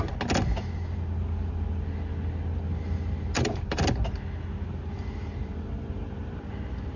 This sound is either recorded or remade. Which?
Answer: recorded